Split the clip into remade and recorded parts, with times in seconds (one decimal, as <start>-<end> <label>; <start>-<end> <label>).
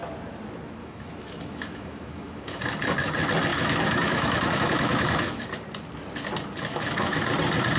0.0-0.8 recorded; 0.8-2.6 remade; 2.6-3.5 recorded; 3.5-5.4 remade; 5.4-6.7 recorded; 6.7-7.3 remade; 7.3-7.8 recorded